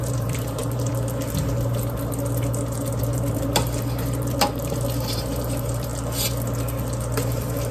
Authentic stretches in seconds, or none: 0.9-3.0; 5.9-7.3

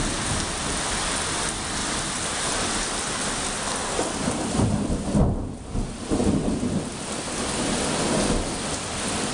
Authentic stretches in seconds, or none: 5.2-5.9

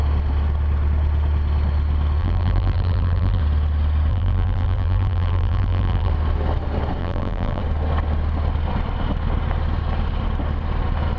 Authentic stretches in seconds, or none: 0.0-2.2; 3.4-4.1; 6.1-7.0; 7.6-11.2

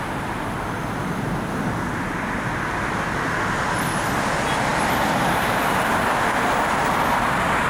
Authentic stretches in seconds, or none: 0.0-7.7